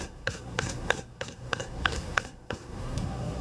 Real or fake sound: fake